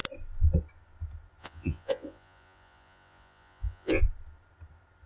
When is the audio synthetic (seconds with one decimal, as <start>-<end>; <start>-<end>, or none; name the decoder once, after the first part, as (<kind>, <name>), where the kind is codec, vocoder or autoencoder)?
1.4-4.0 (vocoder, Vocos)